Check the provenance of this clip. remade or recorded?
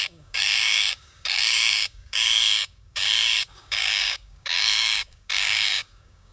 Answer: remade